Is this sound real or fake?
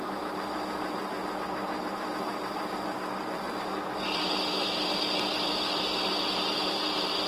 real